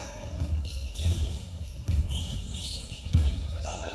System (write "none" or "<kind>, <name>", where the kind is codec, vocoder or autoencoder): codec, SNAC